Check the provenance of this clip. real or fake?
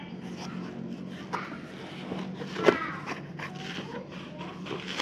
real